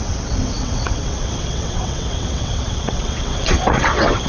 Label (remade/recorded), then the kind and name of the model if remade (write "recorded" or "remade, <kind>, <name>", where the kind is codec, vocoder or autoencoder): remade, vocoder, WaveNeXt